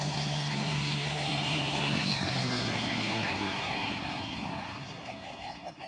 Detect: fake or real fake